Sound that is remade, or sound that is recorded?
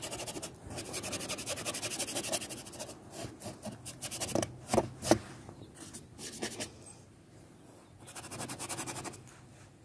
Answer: recorded